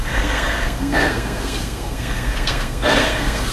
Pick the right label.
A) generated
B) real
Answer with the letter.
A